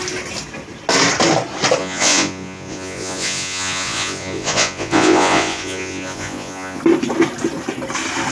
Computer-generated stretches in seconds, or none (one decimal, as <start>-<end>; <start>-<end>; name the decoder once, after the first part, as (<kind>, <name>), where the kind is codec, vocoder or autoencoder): 1.8-6.8 (vocoder, Vocos)